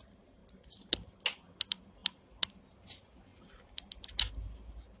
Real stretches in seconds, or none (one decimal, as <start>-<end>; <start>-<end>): 0.0-5.0